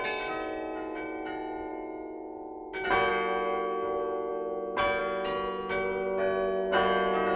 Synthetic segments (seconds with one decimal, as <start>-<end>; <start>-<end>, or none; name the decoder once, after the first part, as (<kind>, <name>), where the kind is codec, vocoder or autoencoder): none